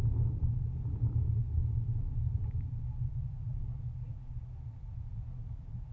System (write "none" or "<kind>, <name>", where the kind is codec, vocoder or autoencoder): none